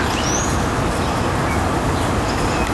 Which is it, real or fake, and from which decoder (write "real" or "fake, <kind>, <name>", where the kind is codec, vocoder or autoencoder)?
real